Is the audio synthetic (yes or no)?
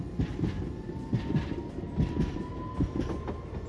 no